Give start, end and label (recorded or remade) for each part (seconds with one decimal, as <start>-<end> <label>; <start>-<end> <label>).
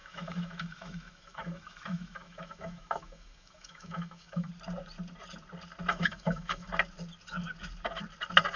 0.0-4.5 remade; 4.5-5.9 recorded; 5.9-6.7 remade; 6.7-8.6 recorded